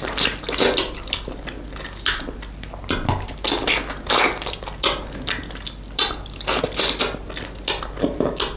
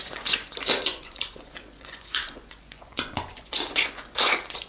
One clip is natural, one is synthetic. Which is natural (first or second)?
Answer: first